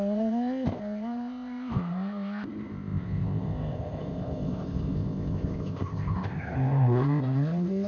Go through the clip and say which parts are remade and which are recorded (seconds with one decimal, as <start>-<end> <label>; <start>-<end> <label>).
0.0-7.9 remade